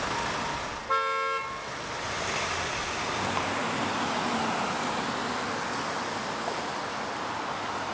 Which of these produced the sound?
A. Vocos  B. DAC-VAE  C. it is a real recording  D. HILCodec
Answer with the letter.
C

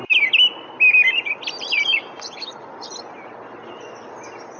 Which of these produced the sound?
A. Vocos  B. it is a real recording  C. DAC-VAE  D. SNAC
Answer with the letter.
B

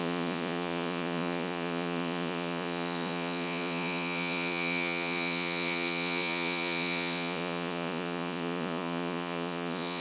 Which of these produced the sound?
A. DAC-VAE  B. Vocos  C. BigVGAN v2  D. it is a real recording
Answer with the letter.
B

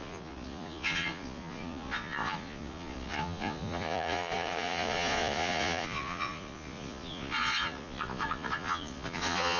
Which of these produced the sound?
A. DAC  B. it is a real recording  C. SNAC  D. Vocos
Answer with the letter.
D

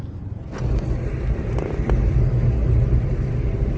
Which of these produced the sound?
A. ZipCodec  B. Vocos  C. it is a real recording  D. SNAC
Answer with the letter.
C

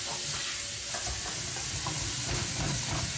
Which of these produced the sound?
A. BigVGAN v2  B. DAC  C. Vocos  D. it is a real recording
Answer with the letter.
D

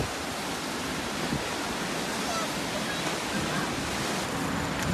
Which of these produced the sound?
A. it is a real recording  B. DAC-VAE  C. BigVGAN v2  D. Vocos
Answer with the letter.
A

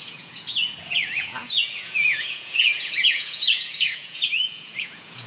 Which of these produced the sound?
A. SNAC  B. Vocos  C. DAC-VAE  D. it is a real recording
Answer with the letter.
B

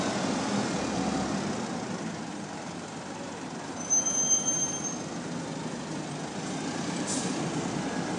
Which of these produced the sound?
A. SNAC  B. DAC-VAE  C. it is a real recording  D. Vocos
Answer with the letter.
C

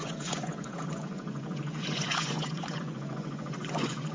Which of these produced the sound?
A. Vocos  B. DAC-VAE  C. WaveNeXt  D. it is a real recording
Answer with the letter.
A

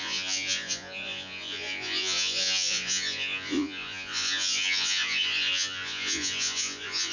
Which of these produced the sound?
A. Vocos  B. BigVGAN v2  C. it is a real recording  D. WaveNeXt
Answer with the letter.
A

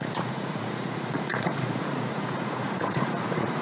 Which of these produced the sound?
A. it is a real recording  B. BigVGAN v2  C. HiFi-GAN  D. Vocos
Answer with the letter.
D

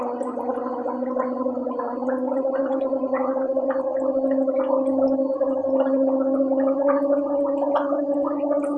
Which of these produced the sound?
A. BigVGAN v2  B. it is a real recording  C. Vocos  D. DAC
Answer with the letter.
B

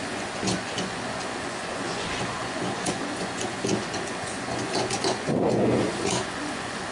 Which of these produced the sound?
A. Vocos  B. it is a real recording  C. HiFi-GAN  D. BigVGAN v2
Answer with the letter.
A